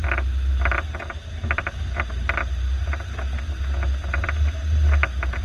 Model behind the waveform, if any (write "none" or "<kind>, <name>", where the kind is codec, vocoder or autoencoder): none